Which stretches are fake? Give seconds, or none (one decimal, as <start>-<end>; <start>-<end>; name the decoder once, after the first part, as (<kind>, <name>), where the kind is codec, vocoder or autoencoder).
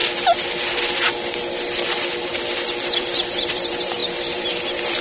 3.0-5.0 (vocoder, BigVGAN v2)